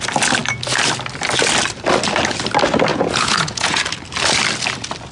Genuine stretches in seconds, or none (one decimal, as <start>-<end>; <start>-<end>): 0.0-2.9; 3.8-5.1